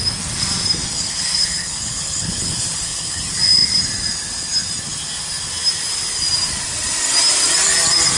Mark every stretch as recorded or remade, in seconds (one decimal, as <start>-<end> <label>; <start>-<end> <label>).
0.0-1.0 recorded; 1.0-3.2 remade; 3.2-8.2 recorded